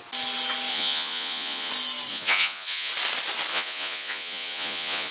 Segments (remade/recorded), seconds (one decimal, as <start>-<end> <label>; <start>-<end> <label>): 0.0-0.7 recorded; 0.7-1.7 remade; 1.7-2.1 recorded; 2.1-2.9 remade; 2.9-3.5 recorded; 3.5-5.1 remade